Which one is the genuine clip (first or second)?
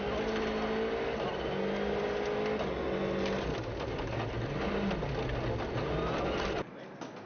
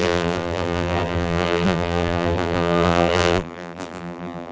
first